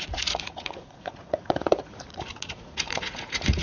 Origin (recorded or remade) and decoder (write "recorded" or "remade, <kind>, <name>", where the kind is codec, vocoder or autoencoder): remade, vocoder, Vocos